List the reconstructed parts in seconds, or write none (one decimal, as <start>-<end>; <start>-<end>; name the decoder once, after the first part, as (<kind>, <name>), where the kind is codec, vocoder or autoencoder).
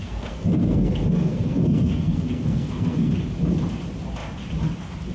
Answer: 0.0-3.1 (codec, SNAC)